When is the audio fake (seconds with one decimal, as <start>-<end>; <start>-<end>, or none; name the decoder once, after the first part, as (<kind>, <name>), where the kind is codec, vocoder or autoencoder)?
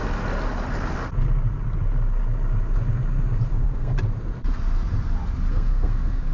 3.5-3.9 (codec, SNAC); 5.5-6.3